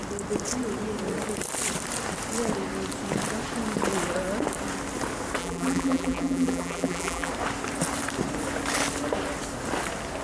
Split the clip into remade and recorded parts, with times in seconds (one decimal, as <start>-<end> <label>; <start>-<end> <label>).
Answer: 0.0-5.4 recorded; 5.4-7.3 remade; 7.3-10.2 recorded